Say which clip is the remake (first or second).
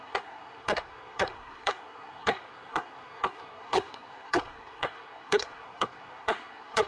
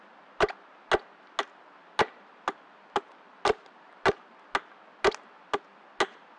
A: first